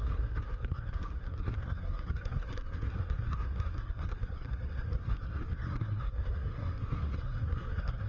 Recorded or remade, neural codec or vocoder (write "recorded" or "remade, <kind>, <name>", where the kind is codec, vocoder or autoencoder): remade, codec, SNAC